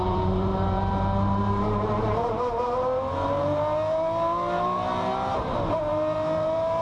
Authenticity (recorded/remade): remade